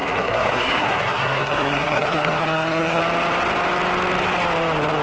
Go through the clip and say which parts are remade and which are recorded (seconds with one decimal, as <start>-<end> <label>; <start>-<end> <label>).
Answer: 0.0-3.0 remade; 3.0-5.0 recorded